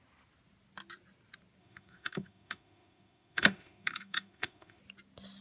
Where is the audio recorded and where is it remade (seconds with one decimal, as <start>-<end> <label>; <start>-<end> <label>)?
0.0-1.6 recorded; 1.6-4.8 remade; 4.8-5.4 recorded